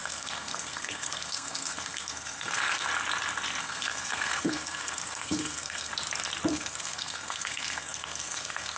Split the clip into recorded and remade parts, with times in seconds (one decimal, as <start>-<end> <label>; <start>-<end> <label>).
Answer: 0.0-2.9 remade; 2.9-3.6 recorded; 3.6-5.9 remade; 5.9-6.5 recorded; 6.5-8.8 remade